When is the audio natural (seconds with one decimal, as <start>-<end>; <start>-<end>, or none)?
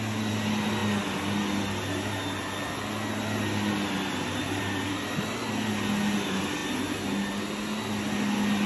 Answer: 0.0-8.7